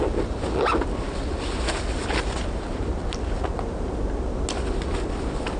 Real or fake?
real